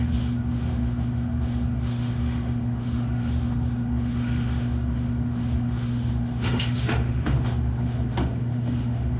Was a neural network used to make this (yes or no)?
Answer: yes